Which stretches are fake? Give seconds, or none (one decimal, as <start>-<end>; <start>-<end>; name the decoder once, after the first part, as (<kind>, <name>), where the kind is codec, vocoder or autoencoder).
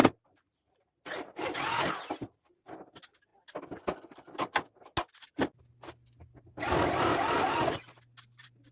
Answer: 0.0-1.4 (vocoder, BigVGAN v2)